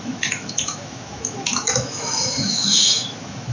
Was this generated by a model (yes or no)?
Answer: yes